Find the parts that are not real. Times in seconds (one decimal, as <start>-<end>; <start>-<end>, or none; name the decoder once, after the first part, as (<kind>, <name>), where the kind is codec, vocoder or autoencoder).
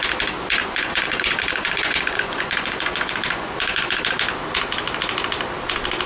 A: 0.6-4.0 (vocoder, Vocos)